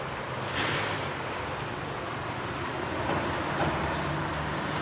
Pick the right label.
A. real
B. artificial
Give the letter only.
A